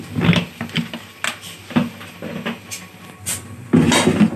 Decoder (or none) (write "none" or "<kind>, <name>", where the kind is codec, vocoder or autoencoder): none